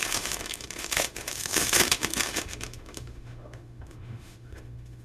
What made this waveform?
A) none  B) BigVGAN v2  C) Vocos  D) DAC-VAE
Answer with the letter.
D